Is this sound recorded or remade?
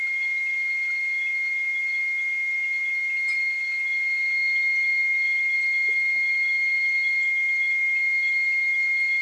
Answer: recorded